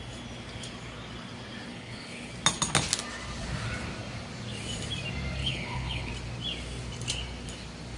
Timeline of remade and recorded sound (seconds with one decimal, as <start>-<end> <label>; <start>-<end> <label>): 0.0-1.7 recorded; 1.7-2.3 remade; 2.3-5.4 recorded; 5.4-6.1 remade; 6.1-8.0 recorded